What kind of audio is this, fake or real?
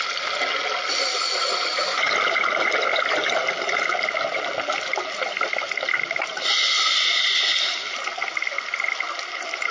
real